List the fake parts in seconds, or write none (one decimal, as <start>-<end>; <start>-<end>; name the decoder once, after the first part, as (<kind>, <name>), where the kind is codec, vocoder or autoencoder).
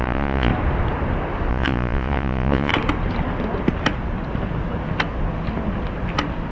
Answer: 0.0-0.5 (vocoder, Vocos); 1.5-2.7